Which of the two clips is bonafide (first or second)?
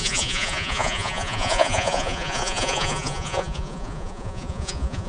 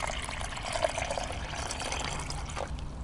second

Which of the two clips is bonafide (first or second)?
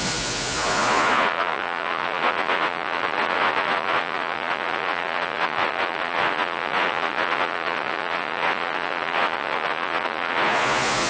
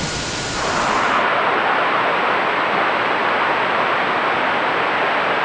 second